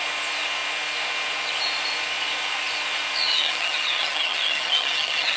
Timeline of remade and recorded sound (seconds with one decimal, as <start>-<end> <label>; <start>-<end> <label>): 0.0-3.3 recorded; 3.3-5.4 remade